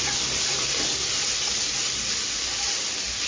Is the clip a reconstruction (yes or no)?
no